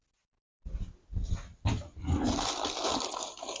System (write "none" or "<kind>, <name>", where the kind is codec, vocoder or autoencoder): none